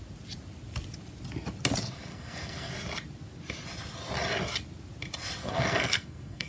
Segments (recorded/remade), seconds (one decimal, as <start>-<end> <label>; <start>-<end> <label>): 0.0-2.1 recorded; 2.1-2.7 remade; 2.7-5.4 recorded; 5.4-6.5 remade